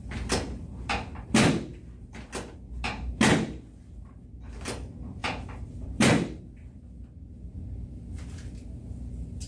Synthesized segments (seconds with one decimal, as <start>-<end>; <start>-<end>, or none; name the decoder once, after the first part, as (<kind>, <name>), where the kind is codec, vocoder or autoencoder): none